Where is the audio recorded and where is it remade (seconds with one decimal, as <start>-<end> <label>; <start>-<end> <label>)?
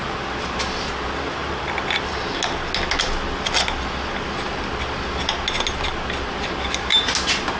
0.0-7.6 recorded